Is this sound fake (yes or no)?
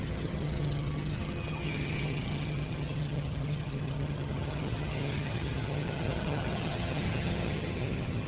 yes